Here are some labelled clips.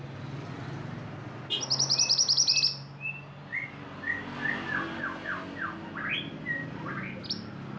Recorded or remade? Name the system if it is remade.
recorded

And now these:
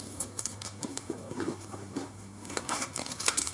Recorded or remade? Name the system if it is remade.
remade, codec, SNAC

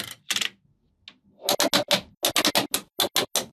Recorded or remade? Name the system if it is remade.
recorded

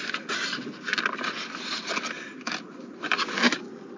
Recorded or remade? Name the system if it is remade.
recorded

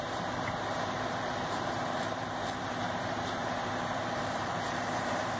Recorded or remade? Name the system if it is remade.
remade, vocoder, BigVGAN v2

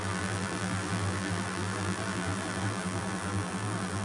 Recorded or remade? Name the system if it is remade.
remade, vocoder, BigVGAN v2